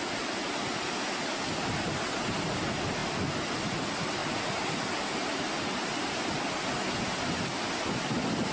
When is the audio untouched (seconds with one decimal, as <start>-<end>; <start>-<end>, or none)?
0.0-8.5